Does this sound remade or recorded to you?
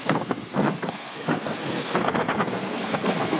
remade